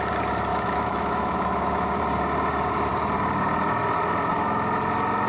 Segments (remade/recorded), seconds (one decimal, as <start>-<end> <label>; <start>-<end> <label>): 0.0-0.5 recorded; 0.5-2.0 remade; 2.0-5.3 recorded